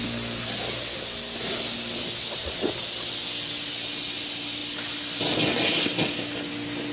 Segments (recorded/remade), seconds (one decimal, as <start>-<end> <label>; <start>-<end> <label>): 0.0-6.9 recorded